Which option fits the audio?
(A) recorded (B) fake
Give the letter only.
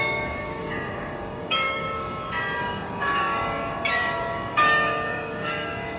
B